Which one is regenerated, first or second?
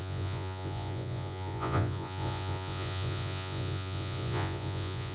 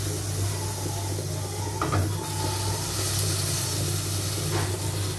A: first